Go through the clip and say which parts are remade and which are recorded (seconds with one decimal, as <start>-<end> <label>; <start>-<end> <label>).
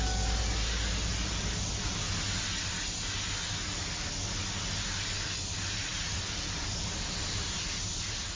0.0-8.4 recorded